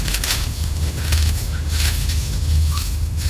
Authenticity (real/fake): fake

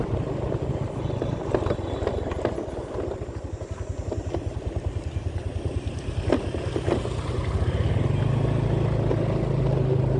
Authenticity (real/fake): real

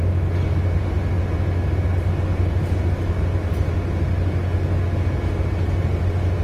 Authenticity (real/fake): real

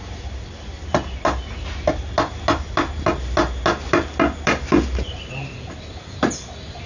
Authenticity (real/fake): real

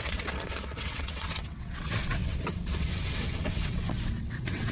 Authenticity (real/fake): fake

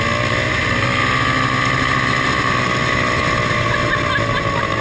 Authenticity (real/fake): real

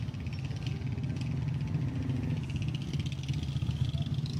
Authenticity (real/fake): real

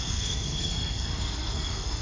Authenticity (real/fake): fake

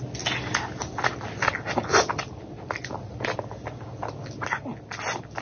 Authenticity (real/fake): real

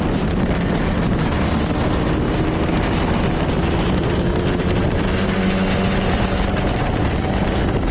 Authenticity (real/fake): real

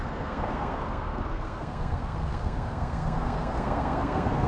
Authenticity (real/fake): fake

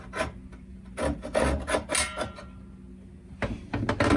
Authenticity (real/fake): real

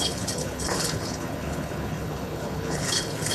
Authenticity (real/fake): fake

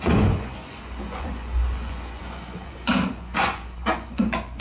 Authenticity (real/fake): fake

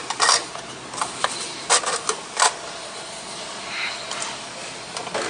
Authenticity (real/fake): real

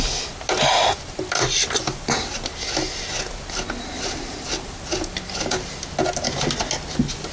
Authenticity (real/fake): real